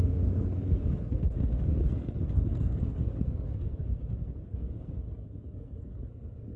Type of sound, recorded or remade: remade